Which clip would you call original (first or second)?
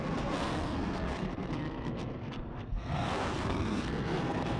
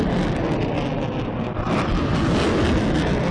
second